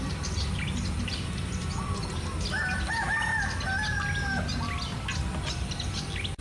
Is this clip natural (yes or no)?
yes